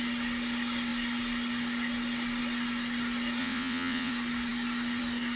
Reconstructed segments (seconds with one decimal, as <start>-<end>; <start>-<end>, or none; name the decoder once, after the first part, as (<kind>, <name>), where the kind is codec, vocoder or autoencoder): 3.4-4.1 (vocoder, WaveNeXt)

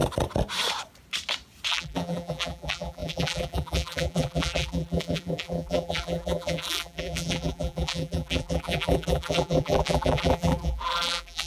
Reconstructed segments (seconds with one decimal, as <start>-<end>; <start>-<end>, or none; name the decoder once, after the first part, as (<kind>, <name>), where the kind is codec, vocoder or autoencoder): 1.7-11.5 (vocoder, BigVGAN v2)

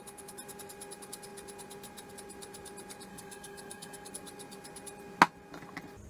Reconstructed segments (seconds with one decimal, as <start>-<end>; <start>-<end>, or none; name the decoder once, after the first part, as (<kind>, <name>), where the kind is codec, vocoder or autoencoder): 3.1-4.1 (codec, DAC)

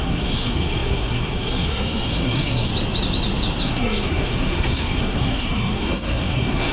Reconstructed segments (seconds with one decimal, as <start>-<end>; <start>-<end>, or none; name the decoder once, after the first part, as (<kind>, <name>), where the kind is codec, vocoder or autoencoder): 0.0-2.7 (codec, SNAC); 3.6-6.7

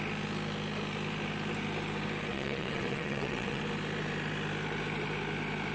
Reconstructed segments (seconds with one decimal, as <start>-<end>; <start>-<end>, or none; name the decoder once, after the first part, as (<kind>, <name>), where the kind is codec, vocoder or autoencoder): 2.3-3.6 (vocoder, WaveNeXt)

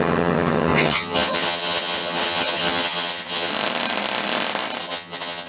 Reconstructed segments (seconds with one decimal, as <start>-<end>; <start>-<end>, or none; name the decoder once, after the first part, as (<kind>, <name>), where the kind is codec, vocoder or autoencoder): 0.0-3.5 (vocoder, HiFi-GAN); 4.8-5.5

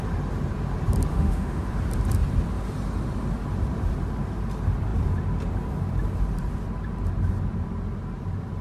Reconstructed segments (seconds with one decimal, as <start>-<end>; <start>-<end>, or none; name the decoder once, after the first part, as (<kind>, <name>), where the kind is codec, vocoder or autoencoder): 1.1-1.7 (autoencoder, DAC-VAE)

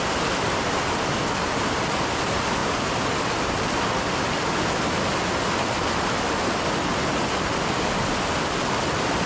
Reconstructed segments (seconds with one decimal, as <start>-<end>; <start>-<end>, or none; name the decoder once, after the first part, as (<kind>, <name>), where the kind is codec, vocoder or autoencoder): none